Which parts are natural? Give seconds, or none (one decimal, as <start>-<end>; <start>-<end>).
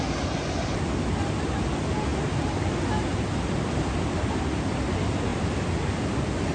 0.0-6.5